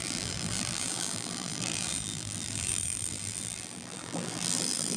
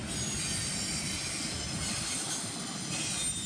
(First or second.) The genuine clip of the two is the second